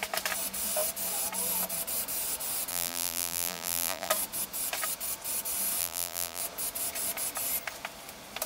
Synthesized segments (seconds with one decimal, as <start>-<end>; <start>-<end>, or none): 2.7-4.1; 5.8-6.4